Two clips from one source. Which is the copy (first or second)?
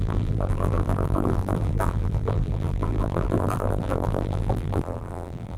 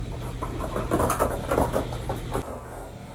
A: first